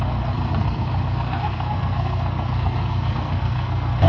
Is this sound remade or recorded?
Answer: remade